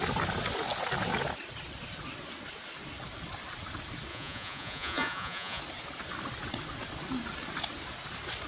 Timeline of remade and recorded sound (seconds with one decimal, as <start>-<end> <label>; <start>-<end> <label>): 0.0-4.1 recorded; 4.1-5.6 remade; 5.6-8.5 recorded